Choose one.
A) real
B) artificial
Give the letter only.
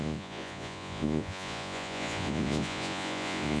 B